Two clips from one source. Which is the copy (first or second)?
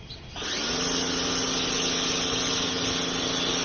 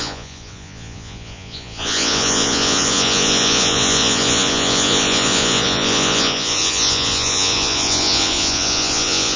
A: second